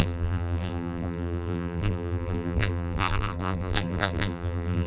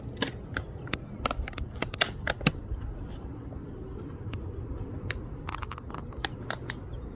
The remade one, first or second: first